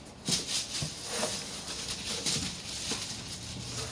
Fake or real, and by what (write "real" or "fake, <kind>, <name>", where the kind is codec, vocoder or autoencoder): real